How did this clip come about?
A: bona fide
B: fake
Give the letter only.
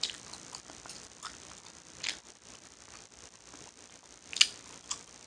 A